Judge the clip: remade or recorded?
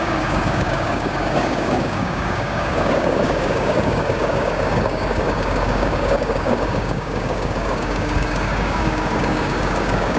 remade